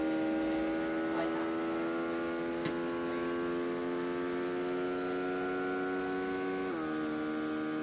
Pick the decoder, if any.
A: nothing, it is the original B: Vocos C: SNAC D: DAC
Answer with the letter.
A